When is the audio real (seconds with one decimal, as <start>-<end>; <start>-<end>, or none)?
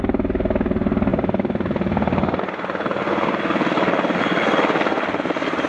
0.0-1.1; 2.4-5.7